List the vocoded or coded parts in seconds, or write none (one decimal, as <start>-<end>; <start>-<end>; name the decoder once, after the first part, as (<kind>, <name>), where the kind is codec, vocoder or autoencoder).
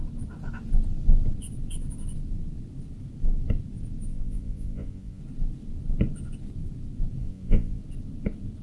4.1-5.2 (vocoder, Vocos); 7.2-7.8